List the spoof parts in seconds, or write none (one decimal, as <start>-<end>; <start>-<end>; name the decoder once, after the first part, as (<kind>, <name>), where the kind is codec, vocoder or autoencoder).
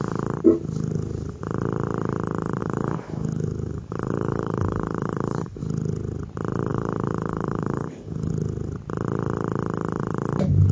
2.6-5.6 (codec, DAC); 6.7-8.3